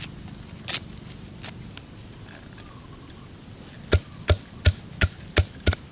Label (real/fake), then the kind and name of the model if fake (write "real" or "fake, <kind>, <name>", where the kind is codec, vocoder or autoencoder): real